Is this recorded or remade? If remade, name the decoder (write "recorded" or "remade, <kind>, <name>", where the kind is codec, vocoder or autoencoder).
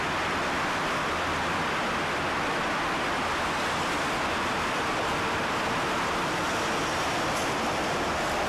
recorded